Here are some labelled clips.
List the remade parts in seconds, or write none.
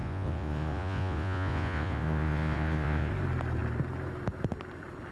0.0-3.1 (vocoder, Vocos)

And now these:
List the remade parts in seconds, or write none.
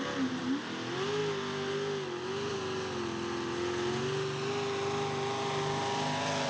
none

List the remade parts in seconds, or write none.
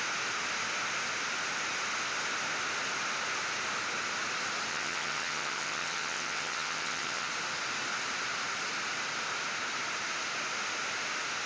4.7-7.3 (vocoder, HiFi-GAN)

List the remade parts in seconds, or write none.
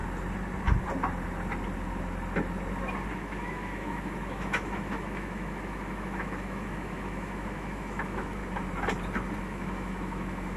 3.1-8.4 (autoencoder, DAC-VAE); 9.4-10.6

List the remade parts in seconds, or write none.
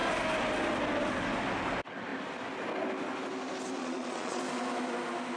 3.8-4.4 (vocoder, Vocos)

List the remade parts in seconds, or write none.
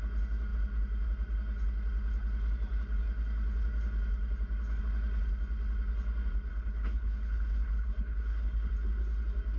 6.5-8.7 (codec, HILCodec)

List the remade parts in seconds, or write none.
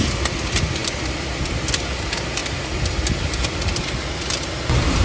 0.8-1.4 (vocoder, BigVGAN v2)